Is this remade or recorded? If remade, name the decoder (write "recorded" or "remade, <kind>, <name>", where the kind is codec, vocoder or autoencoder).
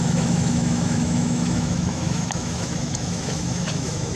remade, autoencoder, DAC-VAE